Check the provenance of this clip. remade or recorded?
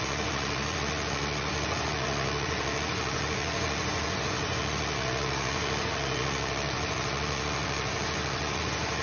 remade